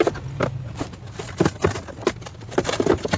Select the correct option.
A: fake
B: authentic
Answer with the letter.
B